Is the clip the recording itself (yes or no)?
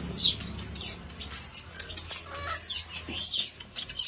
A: yes